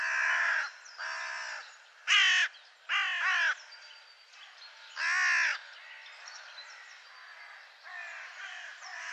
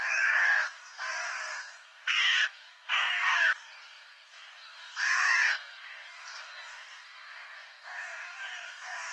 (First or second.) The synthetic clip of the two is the second